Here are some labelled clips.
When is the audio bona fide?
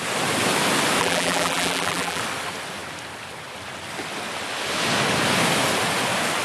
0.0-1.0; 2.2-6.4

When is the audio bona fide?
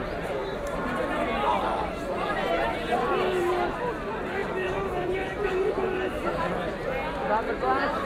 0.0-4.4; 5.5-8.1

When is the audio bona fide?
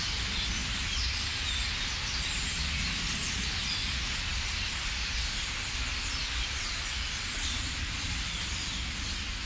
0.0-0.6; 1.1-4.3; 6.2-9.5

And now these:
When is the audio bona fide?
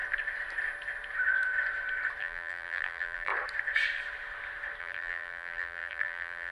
0.0-2.2; 3.3-4.8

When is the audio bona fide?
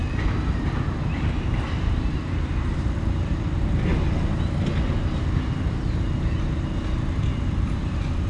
3.9-7.8